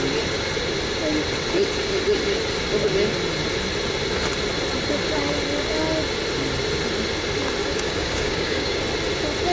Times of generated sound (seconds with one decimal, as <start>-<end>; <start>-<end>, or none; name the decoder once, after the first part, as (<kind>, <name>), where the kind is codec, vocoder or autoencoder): 7.6-8.8 (codec, DAC)